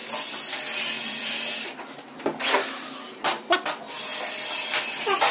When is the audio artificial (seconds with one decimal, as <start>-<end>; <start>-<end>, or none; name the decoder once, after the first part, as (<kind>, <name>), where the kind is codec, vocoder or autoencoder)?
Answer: none